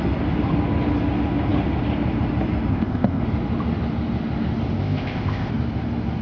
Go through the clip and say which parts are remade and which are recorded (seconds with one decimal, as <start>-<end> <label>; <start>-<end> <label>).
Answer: 0.0-2.7 recorded; 2.7-3.2 remade; 3.2-4.8 recorded; 4.8-5.5 remade; 5.5-6.2 recorded